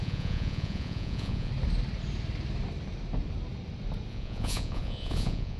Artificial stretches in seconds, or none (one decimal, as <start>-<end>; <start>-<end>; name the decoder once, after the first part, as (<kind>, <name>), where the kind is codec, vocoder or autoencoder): 0.0-1.5 (vocoder, Vocos); 4.1-5.6